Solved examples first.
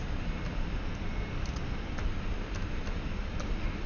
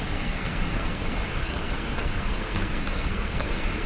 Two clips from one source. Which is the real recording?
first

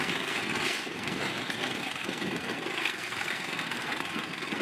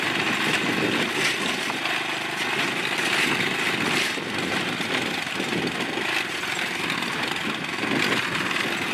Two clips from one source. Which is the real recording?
second